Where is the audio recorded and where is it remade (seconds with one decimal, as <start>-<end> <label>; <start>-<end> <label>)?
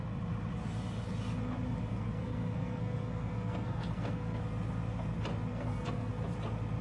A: 0.0-1.9 recorded; 1.9-4.4 remade; 4.4-5.5 recorded; 5.5-6.1 remade; 6.1-6.8 recorded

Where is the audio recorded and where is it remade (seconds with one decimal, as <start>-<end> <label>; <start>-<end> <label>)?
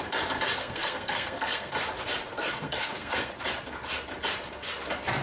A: 0.0-0.6 recorded; 0.6-1.7 remade; 1.7-2.3 recorded; 2.3-3.3 remade; 3.3-5.2 recorded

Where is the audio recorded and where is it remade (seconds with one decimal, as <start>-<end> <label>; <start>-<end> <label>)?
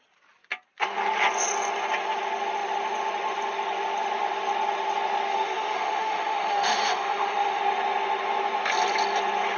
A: 0.0-5.3 recorded; 5.3-7.6 remade; 7.6-9.6 recorded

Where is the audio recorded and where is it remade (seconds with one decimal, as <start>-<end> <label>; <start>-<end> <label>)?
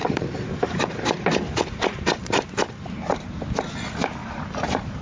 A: 0.0-2.5 remade; 2.5-4.2 recorded; 4.2-5.0 remade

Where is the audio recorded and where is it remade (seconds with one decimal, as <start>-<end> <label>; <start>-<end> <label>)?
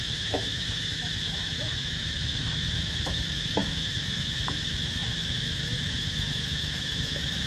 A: 0.0-7.5 remade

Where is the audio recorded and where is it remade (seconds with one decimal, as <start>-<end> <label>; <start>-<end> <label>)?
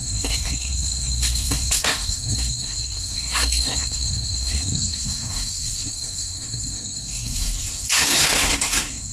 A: 0.0-9.1 remade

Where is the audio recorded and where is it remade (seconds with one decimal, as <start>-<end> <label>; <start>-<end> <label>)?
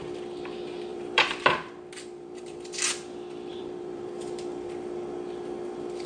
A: 0.0-0.9 recorded; 0.9-2.8 remade; 2.8-3.5 recorded; 3.5-4.1 remade; 4.1-6.1 recorded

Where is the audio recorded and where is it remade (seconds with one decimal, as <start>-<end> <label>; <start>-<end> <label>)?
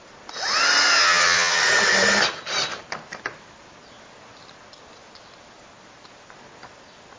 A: 0.0-1.0 recorded; 1.0-1.6 remade; 1.6-7.2 recorded